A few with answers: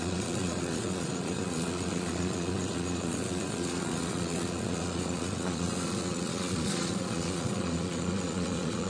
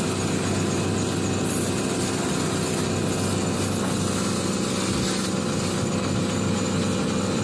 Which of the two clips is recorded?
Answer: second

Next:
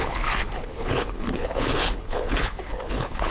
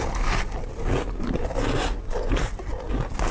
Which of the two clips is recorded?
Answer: second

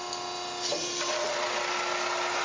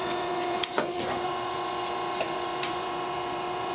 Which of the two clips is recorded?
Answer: first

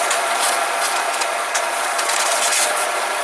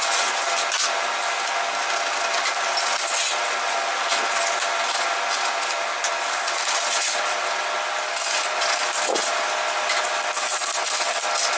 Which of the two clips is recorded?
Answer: second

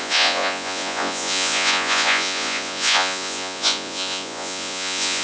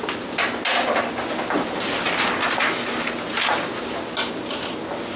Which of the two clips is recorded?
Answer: second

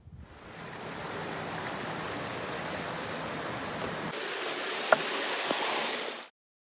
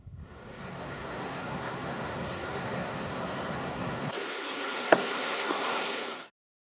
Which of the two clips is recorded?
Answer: first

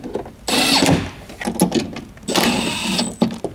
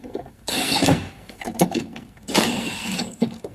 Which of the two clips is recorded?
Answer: first